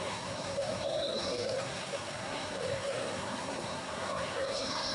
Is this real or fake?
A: fake